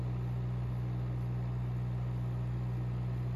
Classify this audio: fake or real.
real